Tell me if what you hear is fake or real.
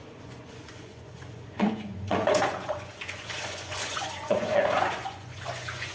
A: fake